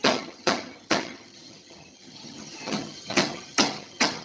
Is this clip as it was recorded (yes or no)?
no